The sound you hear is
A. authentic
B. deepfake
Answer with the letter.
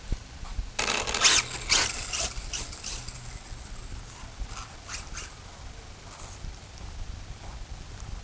A